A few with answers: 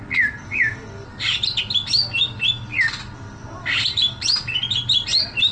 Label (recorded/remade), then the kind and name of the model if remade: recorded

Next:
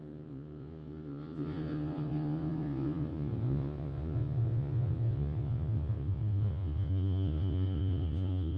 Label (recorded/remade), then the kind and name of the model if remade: remade, vocoder, Vocos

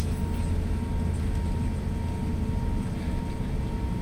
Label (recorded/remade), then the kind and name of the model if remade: recorded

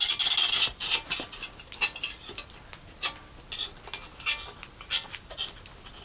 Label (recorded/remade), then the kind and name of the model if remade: recorded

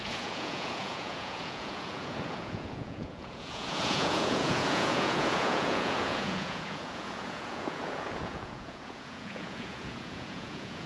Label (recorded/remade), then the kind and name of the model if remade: remade, vocoder, Vocos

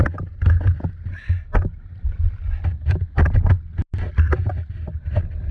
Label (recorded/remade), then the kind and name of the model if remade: recorded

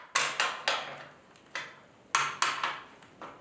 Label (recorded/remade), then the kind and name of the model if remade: recorded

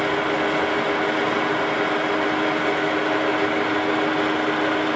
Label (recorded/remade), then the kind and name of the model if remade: recorded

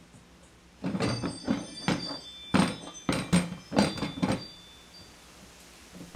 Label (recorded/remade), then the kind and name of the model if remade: recorded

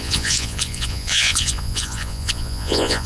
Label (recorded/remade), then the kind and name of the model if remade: remade, vocoder, Vocos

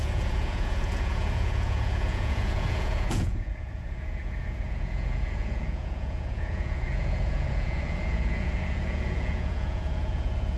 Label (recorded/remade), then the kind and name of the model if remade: remade, vocoder, Vocos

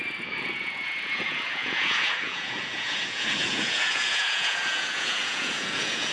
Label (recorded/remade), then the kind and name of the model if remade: remade, vocoder, Vocos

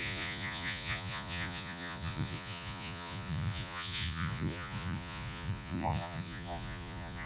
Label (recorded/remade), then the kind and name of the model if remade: remade, vocoder, Vocos